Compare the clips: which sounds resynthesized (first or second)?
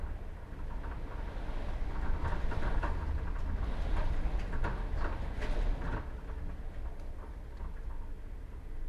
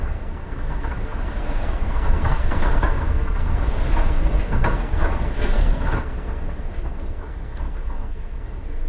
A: second